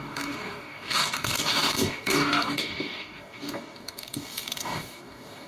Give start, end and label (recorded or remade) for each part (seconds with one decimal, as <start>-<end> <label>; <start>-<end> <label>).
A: 0.0-5.5 remade